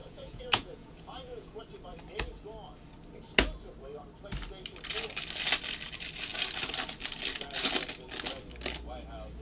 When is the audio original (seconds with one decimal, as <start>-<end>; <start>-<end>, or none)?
1.6-9.4